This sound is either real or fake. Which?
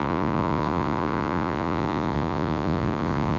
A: fake